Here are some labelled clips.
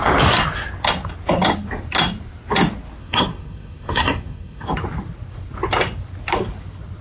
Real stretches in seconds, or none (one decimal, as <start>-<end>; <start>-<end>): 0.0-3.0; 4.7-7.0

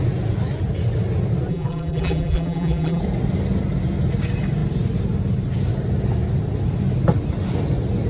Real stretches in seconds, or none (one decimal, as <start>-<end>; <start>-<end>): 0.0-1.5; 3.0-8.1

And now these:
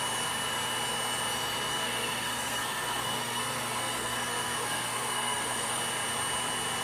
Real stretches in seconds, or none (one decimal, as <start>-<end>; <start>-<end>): 0.0-1.7; 5.8-6.8

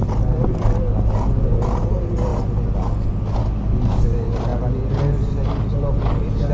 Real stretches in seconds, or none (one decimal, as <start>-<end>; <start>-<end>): 0.0-3.4; 4.0-6.5